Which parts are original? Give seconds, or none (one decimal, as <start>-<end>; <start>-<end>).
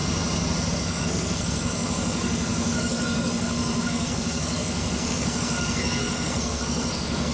0.0-0.7